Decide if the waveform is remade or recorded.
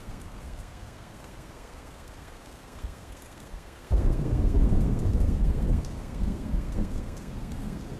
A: remade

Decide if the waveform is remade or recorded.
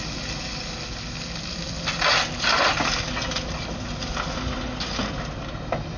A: recorded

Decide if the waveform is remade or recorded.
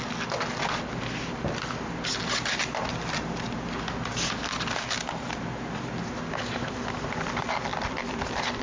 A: recorded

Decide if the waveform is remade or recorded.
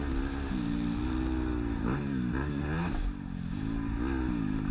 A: recorded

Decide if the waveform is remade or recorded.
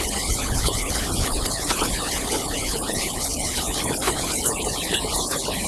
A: remade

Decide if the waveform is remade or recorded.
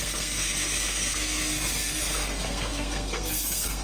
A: remade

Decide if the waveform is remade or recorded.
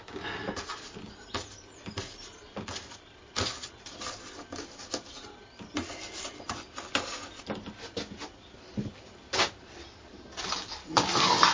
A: recorded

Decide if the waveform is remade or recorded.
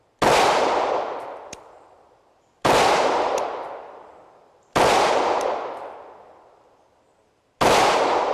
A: recorded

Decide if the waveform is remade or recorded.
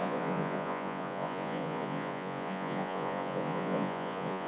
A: remade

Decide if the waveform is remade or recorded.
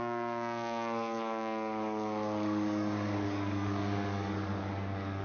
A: remade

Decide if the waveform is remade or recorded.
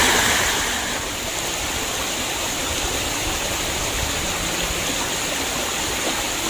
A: recorded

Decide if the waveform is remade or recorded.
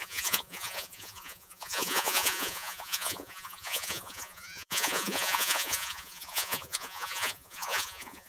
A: remade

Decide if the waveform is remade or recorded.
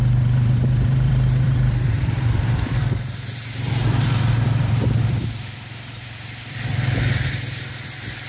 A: remade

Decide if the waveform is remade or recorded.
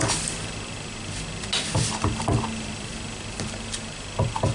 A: recorded